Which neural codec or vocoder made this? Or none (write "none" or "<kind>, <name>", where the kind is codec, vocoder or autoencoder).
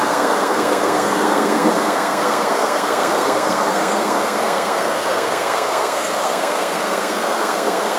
codec, SNAC